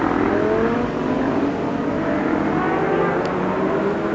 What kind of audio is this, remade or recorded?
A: recorded